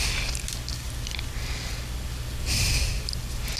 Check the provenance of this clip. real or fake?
real